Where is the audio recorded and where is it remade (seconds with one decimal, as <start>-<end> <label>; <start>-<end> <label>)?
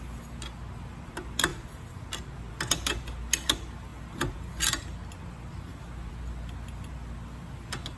0.0-8.0 recorded